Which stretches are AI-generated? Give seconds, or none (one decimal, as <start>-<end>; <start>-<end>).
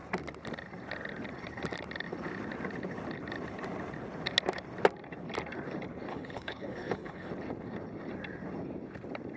6.1-7.3